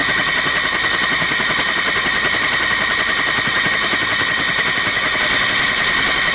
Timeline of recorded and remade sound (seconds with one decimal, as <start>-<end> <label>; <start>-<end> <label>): 0.0-3.7 remade; 3.7-6.3 recorded